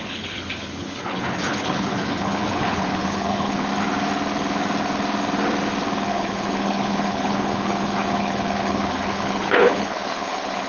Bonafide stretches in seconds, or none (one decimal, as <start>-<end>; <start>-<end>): 3.7-6.1